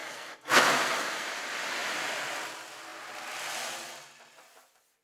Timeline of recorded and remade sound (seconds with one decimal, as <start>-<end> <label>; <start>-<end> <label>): 0.0-1.3 remade; 1.3-5.0 recorded

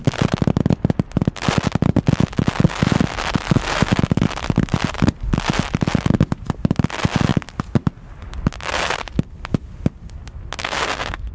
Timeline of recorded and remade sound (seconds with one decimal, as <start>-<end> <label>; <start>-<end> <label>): 0.0-10.6 recorded; 10.6-11.3 remade

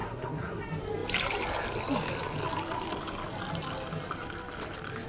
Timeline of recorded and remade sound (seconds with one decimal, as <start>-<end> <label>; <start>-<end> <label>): 0.0-0.6 remade; 0.6-5.1 recorded